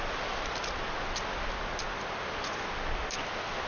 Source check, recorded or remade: recorded